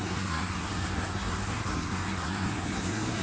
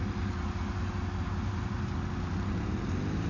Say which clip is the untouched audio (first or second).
second